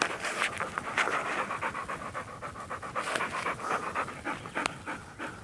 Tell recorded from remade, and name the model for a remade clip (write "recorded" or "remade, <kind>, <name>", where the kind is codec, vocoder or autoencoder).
recorded